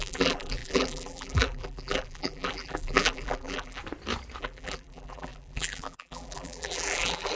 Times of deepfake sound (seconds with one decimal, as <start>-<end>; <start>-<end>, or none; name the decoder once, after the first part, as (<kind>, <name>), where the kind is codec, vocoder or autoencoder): 0.0-3.8 (vocoder, BigVGAN v2); 4.4-7.4